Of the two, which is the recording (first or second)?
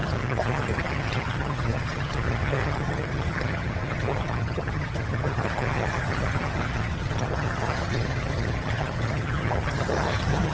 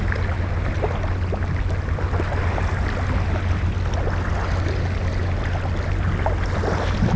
second